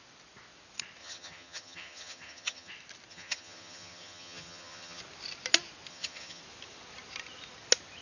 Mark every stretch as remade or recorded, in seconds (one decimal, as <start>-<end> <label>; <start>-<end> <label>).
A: 0.0-1.0 recorded; 1.0-2.7 remade; 2.7-3.1 recorded; 3.1-5.0 remade; 5.0-5.9 recorded; 5.9-6.4 remade; 6.4-8.0 recorded